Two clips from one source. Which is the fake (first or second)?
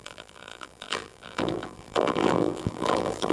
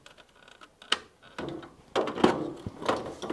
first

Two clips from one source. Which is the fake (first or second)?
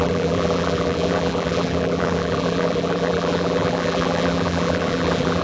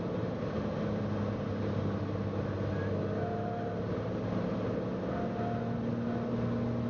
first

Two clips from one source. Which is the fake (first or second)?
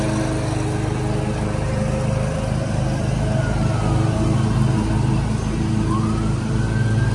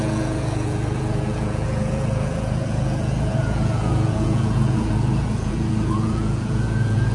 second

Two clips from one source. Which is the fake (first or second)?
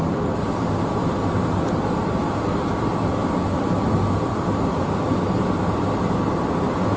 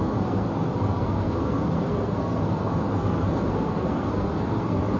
second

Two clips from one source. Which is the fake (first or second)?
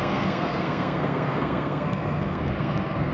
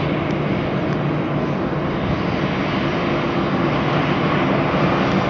first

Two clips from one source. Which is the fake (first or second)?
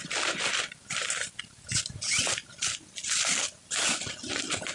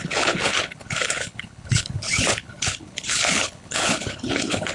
second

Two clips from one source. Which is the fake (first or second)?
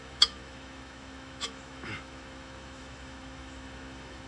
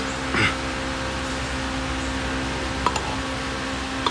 first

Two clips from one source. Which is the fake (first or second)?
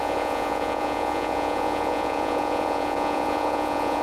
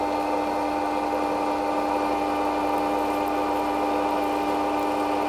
first